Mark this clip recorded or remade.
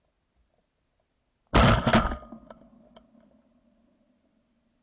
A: recorded